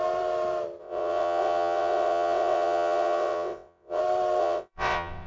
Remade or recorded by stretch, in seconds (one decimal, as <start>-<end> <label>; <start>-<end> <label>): 0.0-0.8 recorded; 0.8-4.0 remade; 4.0-4.4 recorded; 4.4-5.3 remade